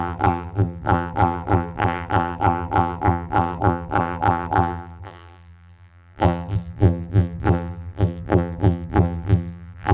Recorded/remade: remade